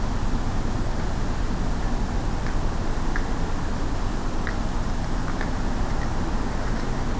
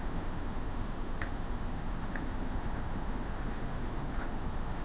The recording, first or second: first